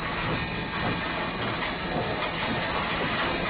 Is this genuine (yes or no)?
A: yes